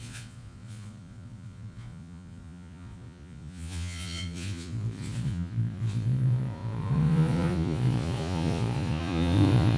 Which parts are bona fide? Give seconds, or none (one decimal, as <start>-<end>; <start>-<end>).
none